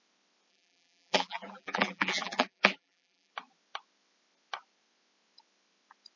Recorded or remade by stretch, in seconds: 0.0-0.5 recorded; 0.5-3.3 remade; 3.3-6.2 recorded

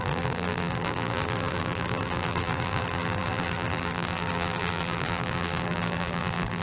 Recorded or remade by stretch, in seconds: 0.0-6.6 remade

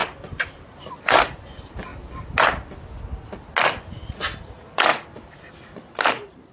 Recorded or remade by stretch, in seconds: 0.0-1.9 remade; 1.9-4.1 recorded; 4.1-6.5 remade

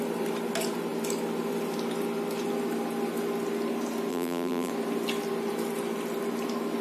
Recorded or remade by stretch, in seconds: 0.0-4.1 recorded; 4.1-4.7 remade; 4.7-6.8 recorded

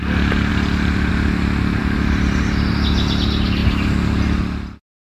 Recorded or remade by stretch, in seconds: 0.0-0.5 recorded; 0.5-1.1 remade; 1.1-1.8 recorded; 1.8-2.7 remade; 2.7-5.0 recorded

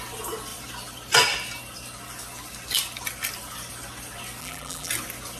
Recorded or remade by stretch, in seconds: 0.0-4.4 recorded; 4.4-4.9 remade; 4.9-5.4 recorded